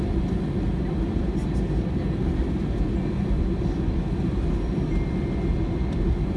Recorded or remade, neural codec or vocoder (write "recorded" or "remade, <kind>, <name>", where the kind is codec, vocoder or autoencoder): recorded